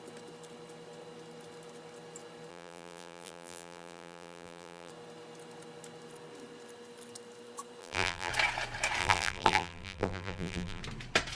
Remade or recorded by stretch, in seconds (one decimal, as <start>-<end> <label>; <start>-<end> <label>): 0.0-2.5 recorded; 2.5-4.9 remade; 4.9-7.8 recorded; 7.8-8.3 remade; 8.3-9.0 recorded; 9.0-10.8 remade; 10.8-11.4 recorded